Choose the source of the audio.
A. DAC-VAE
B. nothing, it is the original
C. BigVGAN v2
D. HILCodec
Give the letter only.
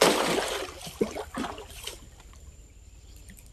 C